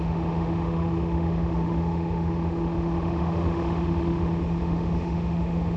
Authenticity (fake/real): fake